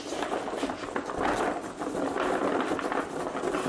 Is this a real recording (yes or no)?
yes